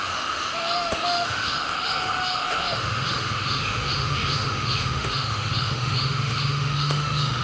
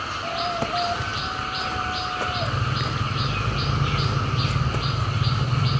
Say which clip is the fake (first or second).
first